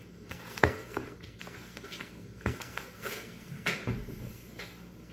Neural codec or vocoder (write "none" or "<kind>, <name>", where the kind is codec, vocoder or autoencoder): codec, SNAC